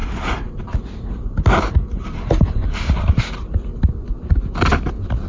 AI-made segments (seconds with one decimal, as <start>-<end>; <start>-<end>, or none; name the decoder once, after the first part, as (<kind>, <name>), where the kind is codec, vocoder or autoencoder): none